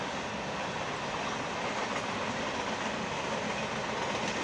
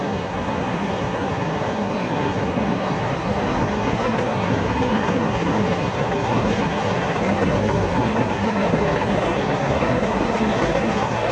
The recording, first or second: first